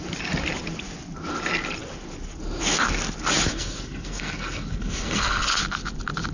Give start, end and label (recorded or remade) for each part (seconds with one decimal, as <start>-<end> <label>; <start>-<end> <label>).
0.0-3.5 recorded; 3.5-5.5 remade; 5.5-6.3 recorded